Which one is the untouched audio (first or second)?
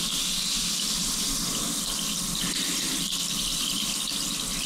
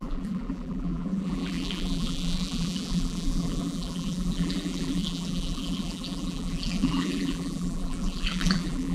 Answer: first